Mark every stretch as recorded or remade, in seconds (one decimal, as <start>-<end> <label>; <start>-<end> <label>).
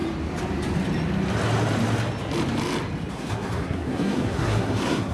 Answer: 0.0-3.1 recorded; 3.1-5.1 remade